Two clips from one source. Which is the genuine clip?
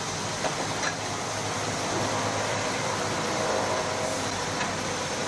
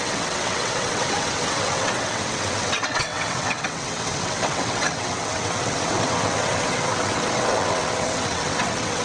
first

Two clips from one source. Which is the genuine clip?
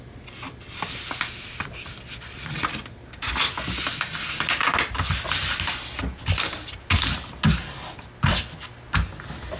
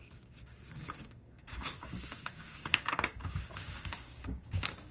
first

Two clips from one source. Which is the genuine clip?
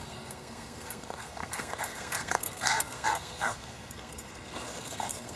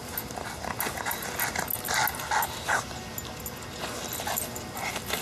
second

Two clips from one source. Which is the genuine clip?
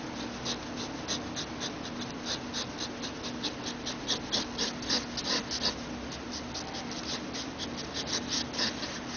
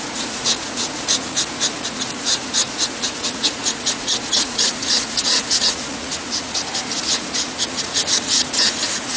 first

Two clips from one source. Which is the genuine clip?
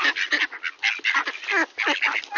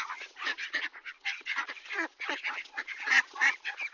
first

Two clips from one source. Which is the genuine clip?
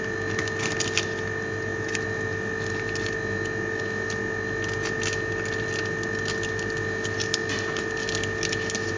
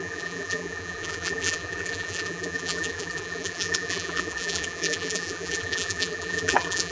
first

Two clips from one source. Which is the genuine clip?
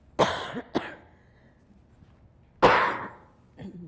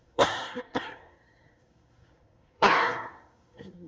first